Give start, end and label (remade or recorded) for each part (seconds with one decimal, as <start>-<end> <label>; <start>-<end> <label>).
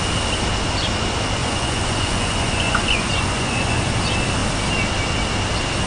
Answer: 0.0-1.4 recorded; 1.4-3.8 remade; 3.8-5.9 recorded